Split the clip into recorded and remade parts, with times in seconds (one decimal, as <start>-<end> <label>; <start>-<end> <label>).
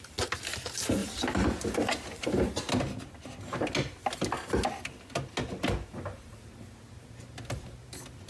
0.0-1.0 recorded; 1.0-2.6 remade; 2.6-8.3 recorded